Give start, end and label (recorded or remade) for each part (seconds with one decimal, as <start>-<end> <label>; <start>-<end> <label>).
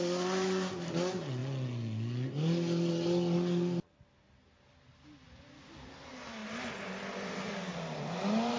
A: 0.0-8.6 recorded